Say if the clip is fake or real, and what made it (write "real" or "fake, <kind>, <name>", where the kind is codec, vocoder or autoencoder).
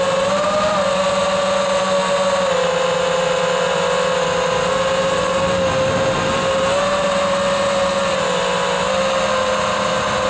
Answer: real